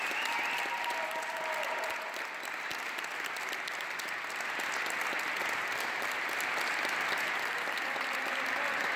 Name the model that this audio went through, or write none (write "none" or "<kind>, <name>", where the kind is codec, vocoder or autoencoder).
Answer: none